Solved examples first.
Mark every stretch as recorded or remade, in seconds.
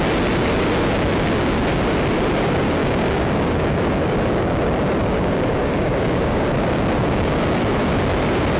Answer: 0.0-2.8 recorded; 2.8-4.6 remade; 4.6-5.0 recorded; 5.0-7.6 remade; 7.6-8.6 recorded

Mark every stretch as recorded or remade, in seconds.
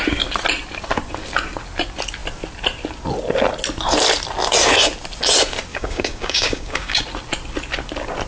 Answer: 0.0-5.7 recorded; 5.7-7.0 remade; 7.0-8.3 recorded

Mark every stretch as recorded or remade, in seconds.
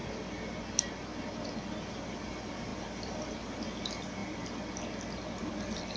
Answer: 0.0-6.0 recorded